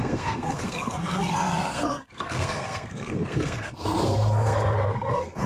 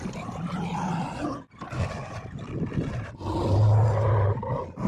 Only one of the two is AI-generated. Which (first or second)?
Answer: first